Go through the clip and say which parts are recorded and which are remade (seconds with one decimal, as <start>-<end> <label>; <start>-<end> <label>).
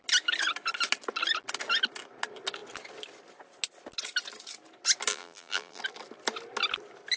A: 0.0-5.1 recorded; 5.1-5.8 remade; 5.8-7.2 recorded